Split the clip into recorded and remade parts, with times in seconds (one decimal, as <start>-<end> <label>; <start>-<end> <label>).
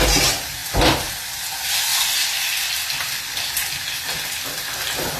0.0-5.2 recorded